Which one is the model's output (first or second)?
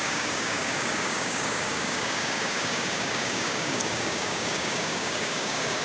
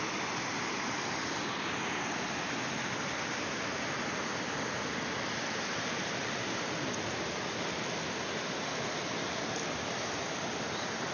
first